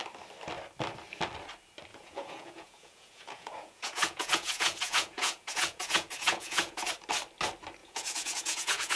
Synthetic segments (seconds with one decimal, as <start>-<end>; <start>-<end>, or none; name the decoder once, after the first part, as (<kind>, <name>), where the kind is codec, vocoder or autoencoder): 1.9-6.9 (vocoder, Vocos); 7.8-9.0